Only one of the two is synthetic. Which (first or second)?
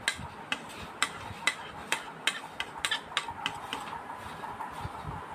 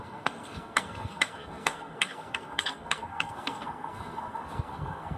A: second